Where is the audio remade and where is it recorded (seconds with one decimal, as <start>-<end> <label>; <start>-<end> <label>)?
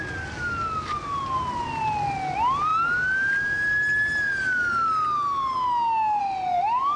0.0-7.0 recorded